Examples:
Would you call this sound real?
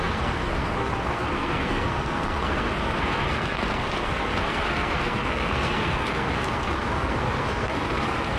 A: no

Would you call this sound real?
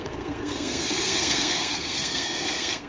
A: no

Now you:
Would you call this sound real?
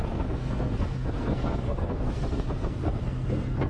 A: no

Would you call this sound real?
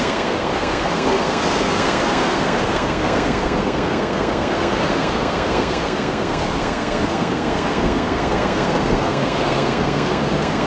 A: no